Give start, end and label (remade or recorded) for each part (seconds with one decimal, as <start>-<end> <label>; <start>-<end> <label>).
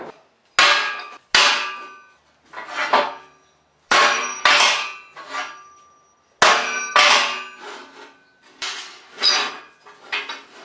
0.0-2.8 recorded; 2.8-4.4 remade; 4.4-7.6 recorded; 7.6-9.5 remade; 9.5-10.6 recorded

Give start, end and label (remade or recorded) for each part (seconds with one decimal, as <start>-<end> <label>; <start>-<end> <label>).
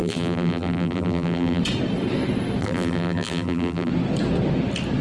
0.0-1.6 remade; 1.6-2.6 recorded; 2.6-3.9 remade; 3.9-5.0 recorded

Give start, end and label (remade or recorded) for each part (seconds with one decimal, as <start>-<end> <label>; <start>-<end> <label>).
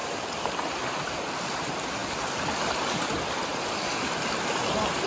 0.0-5.1 recorded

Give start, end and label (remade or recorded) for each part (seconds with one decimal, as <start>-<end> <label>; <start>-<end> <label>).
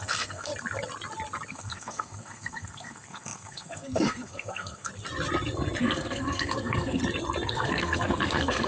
0.0-0.5 remade; 0.5-1.5 recorded; 1.5-4.9 remade; 4.9-5.8 recorded; 5.8-7.0 remade; 7.0-7.5 recorded; 7.5-8.7 remade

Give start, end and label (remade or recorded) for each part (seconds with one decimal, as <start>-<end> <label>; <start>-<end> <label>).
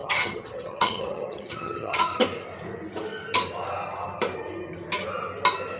0.0-2.1 remade; 2.1-5.8 recorded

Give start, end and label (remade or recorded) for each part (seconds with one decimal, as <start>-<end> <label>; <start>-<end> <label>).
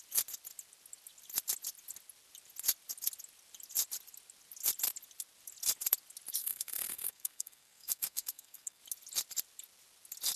0.0-6.4 recorded; 6.4-8.8 remade; 8.8-10.4 recorded